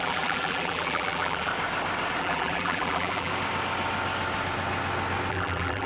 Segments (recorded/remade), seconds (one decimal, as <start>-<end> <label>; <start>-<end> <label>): 0.0-1.5 remade; 1.5-2.2 recorded; 2.2-3.3 remade; 3.3-5.3 recorded; 5.3-5.9 remade